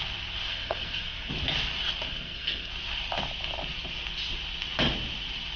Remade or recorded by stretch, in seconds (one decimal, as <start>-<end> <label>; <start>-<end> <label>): 0.0-0.5 recorded; 0.5-1.3 remade; 1.3-2.1 recorded; 2.1-2.7 remade; 2.7-5.6 recorded